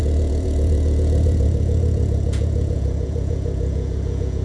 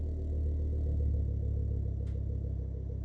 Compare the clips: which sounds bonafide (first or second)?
second